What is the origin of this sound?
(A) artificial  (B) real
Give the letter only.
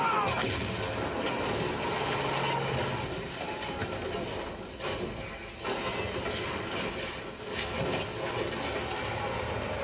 B